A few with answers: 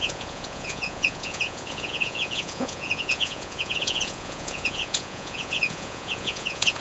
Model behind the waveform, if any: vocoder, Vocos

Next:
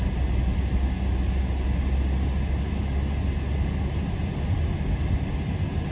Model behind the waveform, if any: none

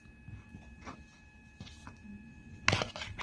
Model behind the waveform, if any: none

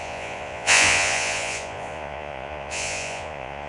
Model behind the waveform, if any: vocoder, Vocos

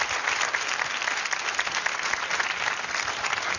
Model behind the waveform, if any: none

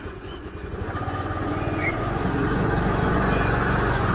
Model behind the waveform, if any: vocoder, Vocos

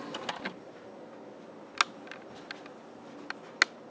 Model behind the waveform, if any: none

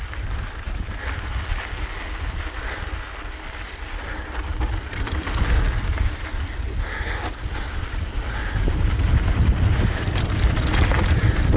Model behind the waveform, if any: none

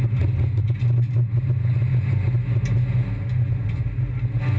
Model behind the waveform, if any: none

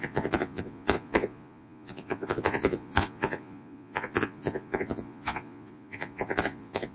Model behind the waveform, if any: vocoder, Vocos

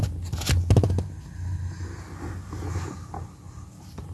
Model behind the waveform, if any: none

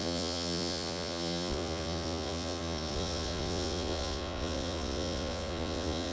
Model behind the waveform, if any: vocoder, Vocos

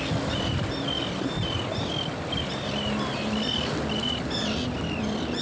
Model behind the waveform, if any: none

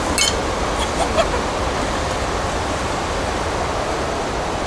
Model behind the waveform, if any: none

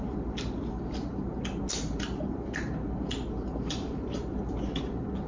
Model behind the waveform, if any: none